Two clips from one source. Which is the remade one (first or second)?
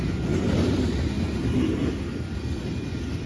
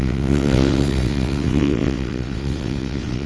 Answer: second